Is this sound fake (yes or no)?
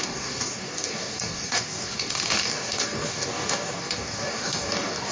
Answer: yes